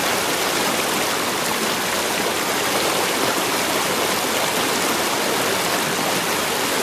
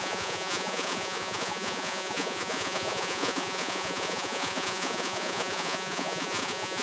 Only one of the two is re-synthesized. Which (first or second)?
second